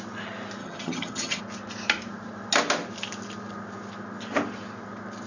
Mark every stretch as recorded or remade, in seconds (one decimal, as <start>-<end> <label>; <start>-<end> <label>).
0.0-0.6 recorded; 0.6-1.4 remade; 1.4-5.3 recorded